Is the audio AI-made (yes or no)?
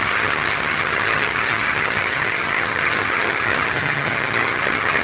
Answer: yes